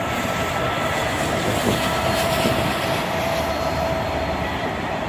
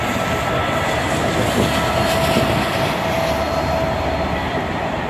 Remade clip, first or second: first